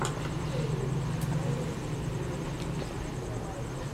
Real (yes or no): yes